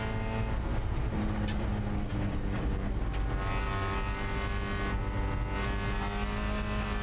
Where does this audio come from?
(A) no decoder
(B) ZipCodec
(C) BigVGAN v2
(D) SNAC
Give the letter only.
A